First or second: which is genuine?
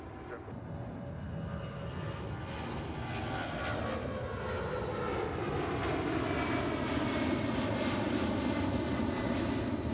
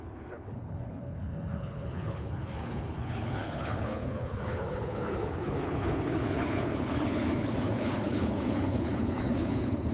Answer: first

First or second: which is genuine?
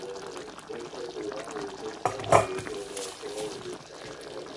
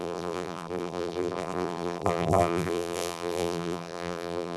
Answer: first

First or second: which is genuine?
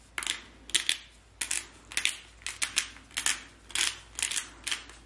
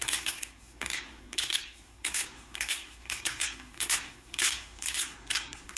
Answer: first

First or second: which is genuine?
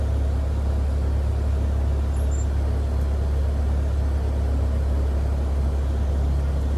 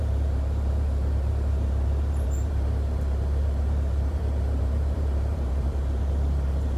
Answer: first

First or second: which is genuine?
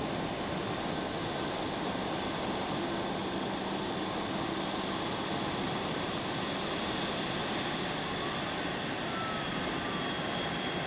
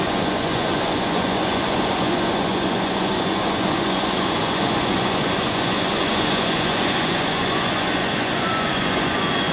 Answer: first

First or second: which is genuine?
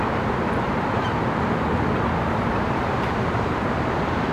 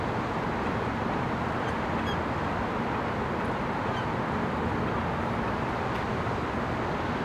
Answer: second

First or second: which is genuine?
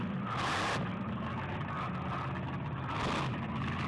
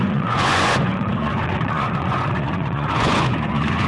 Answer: first